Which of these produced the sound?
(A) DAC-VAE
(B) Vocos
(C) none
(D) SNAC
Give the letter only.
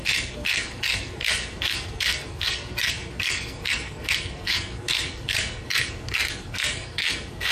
D